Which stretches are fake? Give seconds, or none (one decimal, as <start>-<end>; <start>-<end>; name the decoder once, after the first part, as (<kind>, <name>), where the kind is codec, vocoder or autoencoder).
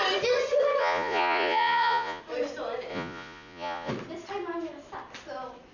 0.8-2.2 (vocoder, Vocos); 2.9-3.9